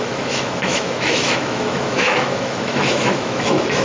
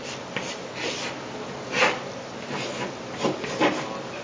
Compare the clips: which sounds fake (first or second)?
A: first